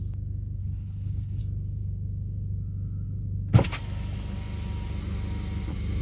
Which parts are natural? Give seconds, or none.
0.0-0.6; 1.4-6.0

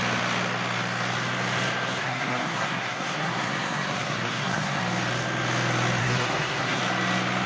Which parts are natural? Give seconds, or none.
0.0-2.0; 4.8-6.0; 6.8-7.5

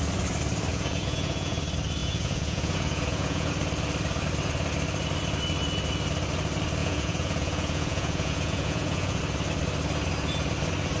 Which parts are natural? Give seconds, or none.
0.0-0.7; 1.6-2.0; 3.5-6.8; 9.2-11.0

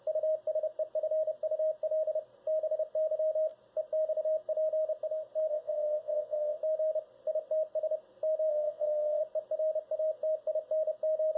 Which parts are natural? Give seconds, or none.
0.0-5.5; 6.6-8.5; 9.2-11.4